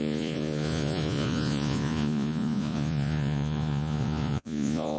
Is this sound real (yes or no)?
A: no